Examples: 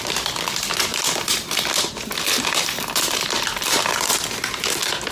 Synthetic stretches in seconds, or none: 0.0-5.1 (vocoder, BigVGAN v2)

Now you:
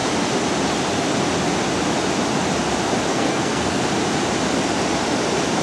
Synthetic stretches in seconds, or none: 3.1-3.8 (codec, SNAC)

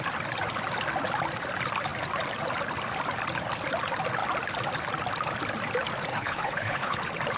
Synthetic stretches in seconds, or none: 6.1-7.0 (codec, HILCodec)